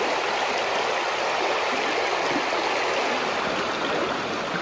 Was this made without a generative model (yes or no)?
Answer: yes